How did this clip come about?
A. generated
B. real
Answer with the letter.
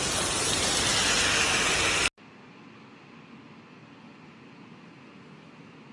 B